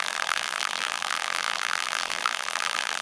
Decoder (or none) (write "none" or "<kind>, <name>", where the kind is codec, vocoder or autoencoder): vocoder, BigVGAN v2